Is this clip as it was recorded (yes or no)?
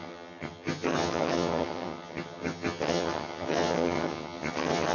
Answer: no